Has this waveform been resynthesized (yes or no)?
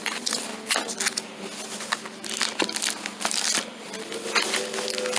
no